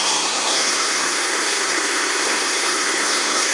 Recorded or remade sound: remade